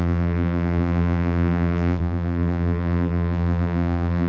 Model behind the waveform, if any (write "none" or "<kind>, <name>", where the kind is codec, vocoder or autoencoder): vocoder, BigVGAN v2